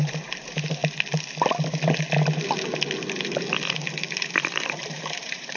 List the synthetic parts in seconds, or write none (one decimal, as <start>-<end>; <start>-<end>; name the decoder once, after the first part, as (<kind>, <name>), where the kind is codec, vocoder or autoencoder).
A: 0.0-0.8 (vocoder, BigVGAN v2); 4.2-5.6